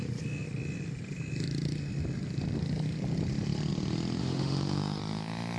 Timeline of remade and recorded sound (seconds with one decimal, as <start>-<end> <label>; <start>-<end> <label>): 0.0-4.2 recorded; 4.2-5.0 remade; 5.0-5.6 recorded